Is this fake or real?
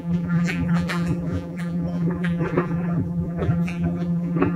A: fake